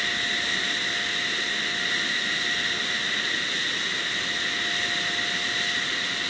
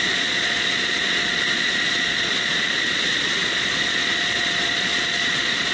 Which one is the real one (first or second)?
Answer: first